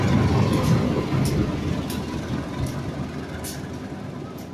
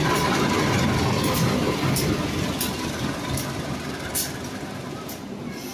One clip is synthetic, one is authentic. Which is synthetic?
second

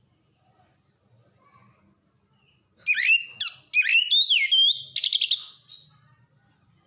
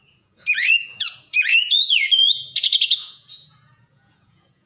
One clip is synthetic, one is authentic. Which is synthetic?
second